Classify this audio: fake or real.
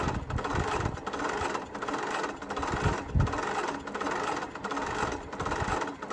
real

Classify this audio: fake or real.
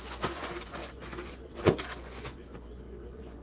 fake